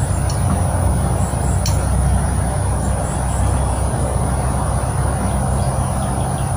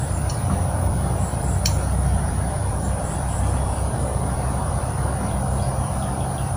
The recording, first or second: first